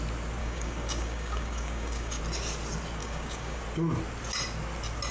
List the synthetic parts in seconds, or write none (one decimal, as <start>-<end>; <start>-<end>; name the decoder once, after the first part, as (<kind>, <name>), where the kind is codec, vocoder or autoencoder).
0.4-2.2 (codec, DAC); 3.0-3.6